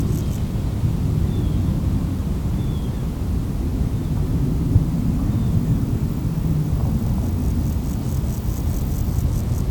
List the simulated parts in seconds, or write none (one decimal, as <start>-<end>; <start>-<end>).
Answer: none